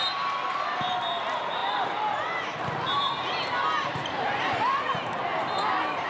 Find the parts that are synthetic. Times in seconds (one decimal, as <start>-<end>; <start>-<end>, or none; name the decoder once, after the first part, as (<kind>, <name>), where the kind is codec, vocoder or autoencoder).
none